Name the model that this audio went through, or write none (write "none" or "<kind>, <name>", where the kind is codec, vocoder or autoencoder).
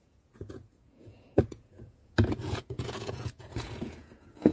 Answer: vocoder, Vocos